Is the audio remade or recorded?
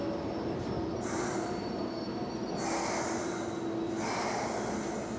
recorded